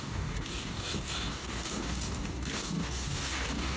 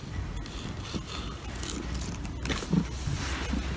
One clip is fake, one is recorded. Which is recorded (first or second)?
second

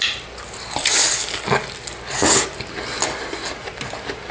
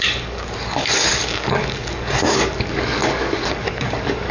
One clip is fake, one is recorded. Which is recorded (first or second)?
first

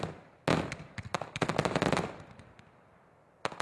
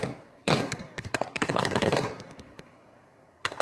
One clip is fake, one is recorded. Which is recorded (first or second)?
first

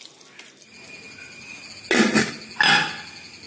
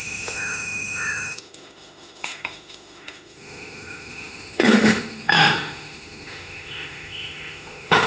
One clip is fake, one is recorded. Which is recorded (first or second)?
first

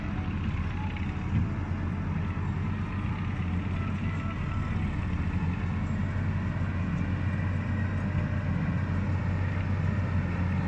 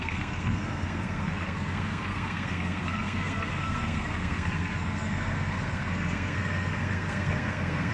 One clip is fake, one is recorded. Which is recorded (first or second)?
first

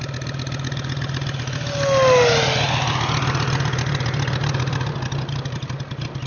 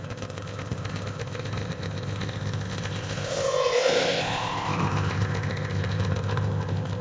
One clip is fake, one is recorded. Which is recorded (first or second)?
first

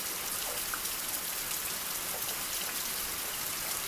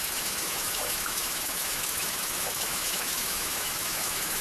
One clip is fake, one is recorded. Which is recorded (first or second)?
first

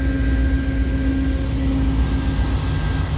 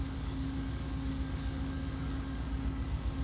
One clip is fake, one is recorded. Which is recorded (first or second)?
first